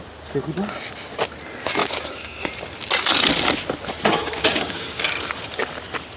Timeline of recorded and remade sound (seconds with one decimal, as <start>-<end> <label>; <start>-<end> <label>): 0.0-1.8 recorded; 1.8-2.5 remade; 2.5-4.1 recorded; 4.1-5.1 remade; 5.1-6.2 recorded